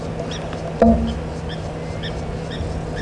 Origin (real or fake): real